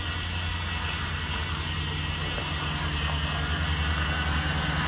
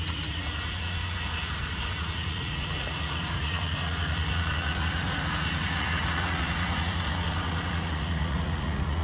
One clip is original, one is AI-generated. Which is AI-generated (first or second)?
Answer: second